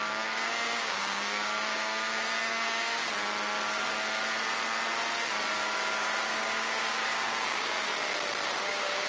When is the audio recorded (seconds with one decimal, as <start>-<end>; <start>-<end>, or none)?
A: 3.0-5.5; 7.9-8.6